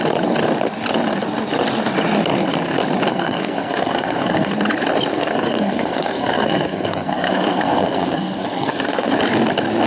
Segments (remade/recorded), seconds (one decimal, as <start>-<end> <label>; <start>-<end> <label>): 0.0-3.1 recorded; 3.1-4.5 remade; 4.5-5.1 recorded; 5.1-9.1 remade; 9.1-9.9 recorded